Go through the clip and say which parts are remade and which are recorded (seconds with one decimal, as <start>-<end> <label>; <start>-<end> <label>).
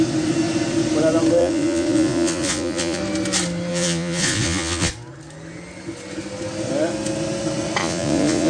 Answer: 0.0-1.4 recorded; 1.4-3.0 remade; 3.0-3.7 recorded; 3.7-4.9 remade; 4.9-7.8 recorded; 7.8-8.5 remade